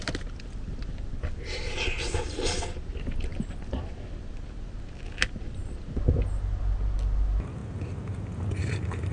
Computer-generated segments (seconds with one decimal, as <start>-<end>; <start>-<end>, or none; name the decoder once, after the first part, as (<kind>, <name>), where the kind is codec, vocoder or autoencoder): 0.7-2.9 (vocoder, BigVGAN v2)